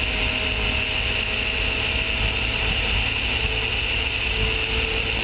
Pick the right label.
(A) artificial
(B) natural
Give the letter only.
B